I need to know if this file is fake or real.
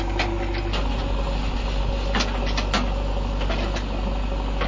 real